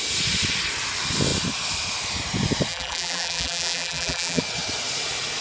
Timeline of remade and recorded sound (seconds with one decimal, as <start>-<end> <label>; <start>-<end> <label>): 0.0-2.7 recorded; 2.7-4.4 remade; 4.4-5.4 recorded